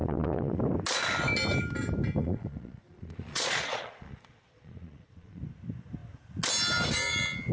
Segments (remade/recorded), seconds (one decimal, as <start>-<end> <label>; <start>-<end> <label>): 0.0-0.6 remade; 0.6-2.2 recorded; 2.2-5.4 remade; 5.4-7.5 recorded